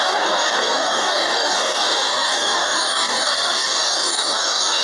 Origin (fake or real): fake